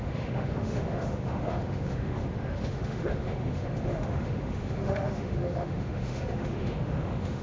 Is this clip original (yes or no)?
no